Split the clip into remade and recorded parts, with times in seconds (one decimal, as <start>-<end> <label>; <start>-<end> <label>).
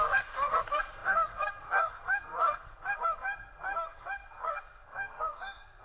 0.0-5.8 remade